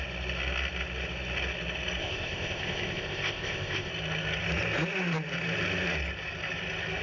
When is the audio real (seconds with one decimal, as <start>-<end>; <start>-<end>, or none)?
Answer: 0.0-2.0; 3.9-7.0